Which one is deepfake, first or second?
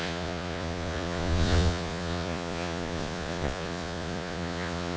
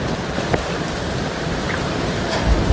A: first